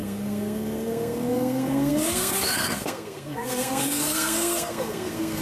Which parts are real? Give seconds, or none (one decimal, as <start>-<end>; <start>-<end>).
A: none